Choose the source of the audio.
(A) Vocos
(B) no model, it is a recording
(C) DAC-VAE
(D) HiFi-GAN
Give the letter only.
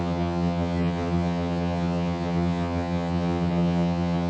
D